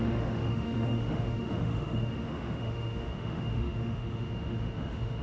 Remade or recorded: remade